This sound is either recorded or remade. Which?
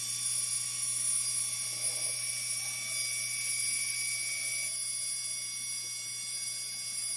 recorded